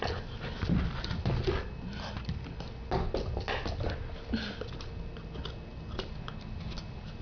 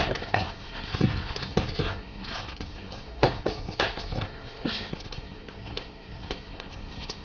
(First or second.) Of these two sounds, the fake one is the second